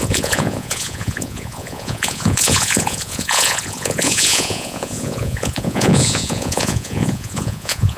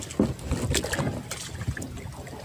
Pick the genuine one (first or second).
second